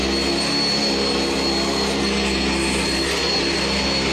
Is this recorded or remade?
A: recorded